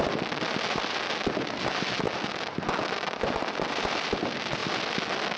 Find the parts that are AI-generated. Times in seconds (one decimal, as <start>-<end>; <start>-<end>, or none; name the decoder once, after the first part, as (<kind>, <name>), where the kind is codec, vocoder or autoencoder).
none

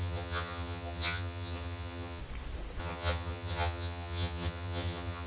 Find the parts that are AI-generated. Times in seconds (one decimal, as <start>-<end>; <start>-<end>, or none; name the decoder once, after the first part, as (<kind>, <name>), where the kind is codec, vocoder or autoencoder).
0.0-2.2 (vocoder, HiFi-GAN); 2.8-5.3

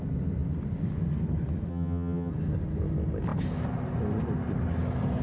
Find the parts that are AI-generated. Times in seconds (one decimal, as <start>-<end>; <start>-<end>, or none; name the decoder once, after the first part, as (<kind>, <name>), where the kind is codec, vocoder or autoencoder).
1.7-2.3 (vocoder, HiFi-GAN)

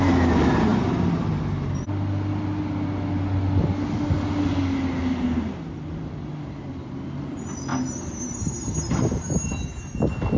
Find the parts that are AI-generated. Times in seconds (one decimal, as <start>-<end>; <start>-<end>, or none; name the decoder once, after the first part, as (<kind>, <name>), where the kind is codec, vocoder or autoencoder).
none

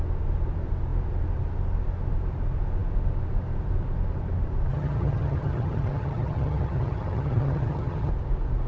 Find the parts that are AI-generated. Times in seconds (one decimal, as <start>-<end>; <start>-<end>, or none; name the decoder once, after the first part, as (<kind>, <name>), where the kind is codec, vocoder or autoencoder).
4.7-8.1 (vocoder, HiFi-GAN)